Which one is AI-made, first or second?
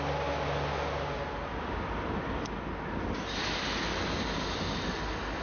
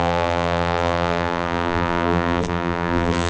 second